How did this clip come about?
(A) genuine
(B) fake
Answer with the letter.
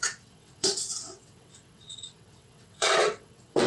B